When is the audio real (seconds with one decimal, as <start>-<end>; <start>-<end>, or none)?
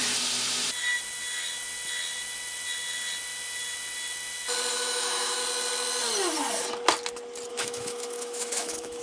0.0-4.7; 5.4-7.5